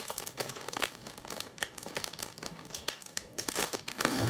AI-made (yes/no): yes